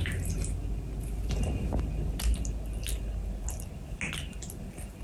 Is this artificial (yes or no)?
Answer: no